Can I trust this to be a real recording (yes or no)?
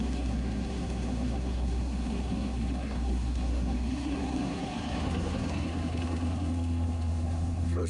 no